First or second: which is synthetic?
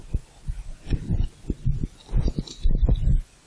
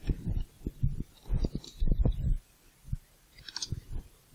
second